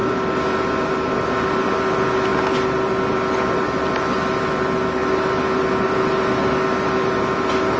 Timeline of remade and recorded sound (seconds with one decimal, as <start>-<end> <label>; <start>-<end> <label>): 0.0-7.8 recorded